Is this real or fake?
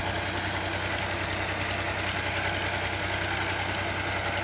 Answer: real